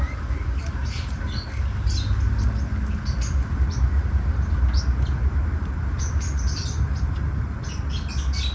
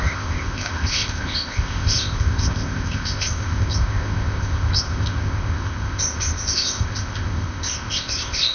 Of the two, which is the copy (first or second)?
second